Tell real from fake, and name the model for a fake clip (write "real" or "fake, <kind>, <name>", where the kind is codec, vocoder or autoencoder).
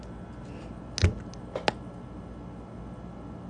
real